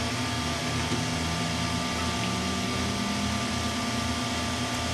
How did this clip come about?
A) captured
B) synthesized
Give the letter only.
A